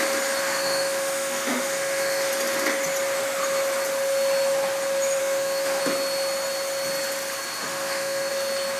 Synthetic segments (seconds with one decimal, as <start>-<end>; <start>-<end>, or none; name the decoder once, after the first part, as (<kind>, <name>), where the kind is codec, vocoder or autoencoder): 0.4-2.3 (autoencoder, DAC-VAE); 5.2-5.8; 7.6-8.3